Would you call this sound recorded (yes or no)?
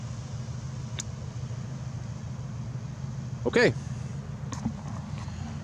yes